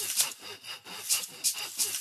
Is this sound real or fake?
real